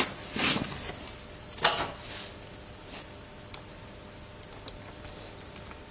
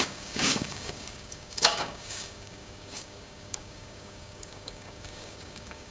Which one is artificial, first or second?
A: second